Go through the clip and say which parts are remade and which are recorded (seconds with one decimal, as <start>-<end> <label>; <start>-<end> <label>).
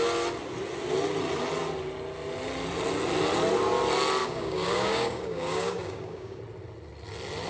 0.0-4.2 recorded; 4.2-6.4 remade; 6.4-7.5 recorded